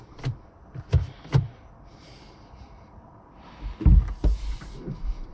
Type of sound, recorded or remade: recorded